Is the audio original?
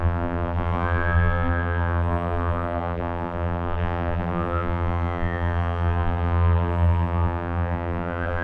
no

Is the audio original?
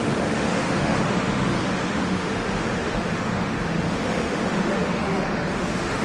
no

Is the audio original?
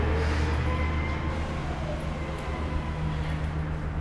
yes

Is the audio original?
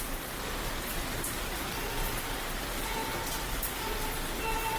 yes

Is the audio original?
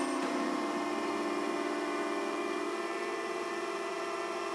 no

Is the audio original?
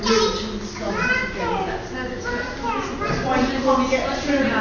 yes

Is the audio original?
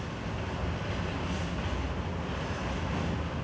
yes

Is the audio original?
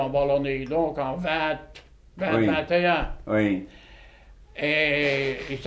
yes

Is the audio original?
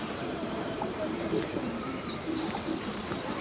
no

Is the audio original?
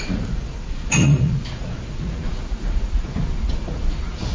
no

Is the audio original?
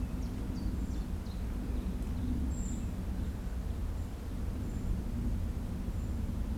yes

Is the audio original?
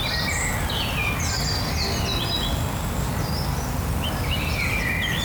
yes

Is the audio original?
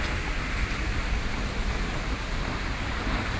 yes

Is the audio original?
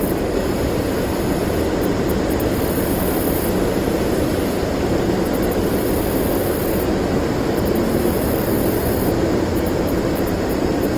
yes